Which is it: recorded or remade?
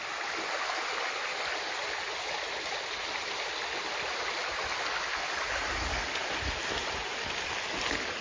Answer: recorded